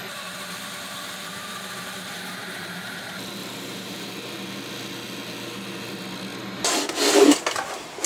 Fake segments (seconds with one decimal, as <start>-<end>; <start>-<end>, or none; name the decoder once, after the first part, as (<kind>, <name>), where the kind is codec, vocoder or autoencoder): 3.4-4.1 (vocoder, BigVGAN v2)